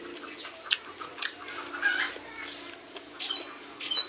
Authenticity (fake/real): real